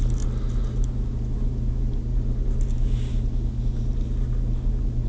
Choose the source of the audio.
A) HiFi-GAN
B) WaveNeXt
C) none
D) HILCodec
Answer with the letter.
C